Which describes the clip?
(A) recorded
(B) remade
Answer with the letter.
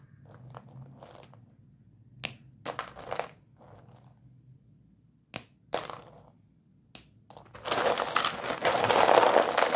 A